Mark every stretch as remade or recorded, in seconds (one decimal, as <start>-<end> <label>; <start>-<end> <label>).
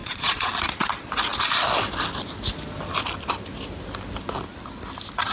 0.0-0.5 remade; 0.5-5.3 recorded